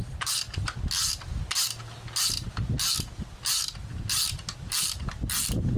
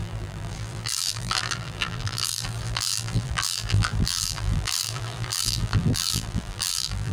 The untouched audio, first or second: first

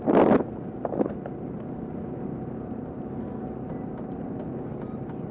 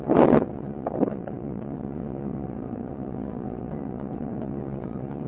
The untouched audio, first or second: first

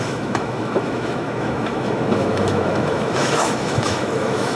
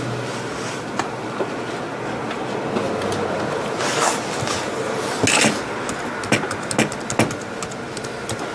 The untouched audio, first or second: second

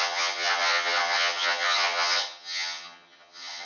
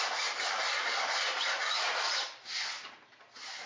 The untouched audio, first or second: second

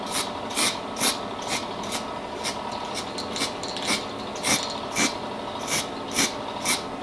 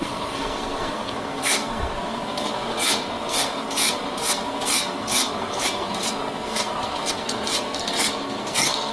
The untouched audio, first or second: first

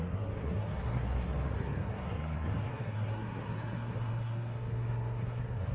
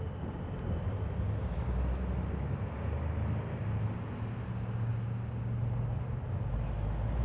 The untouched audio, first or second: second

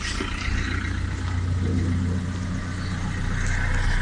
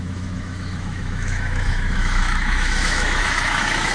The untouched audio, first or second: first